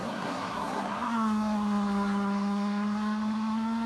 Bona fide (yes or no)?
no